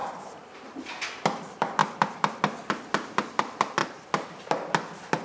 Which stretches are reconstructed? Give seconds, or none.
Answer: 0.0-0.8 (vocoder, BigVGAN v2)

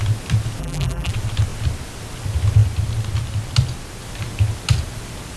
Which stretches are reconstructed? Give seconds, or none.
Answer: 0.6-1.1 (vocoder, BigVGAN v2)